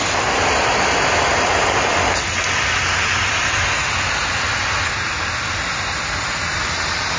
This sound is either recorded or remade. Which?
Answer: recorded